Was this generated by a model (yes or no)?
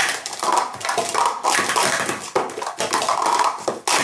no